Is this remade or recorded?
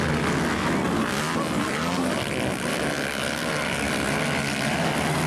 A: recorded